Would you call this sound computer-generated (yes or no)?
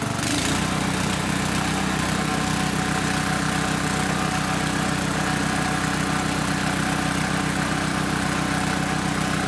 no